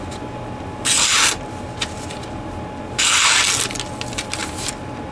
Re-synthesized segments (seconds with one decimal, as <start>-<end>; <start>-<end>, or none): none